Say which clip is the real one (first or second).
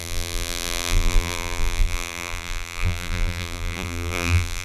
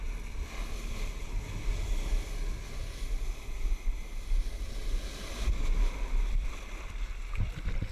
second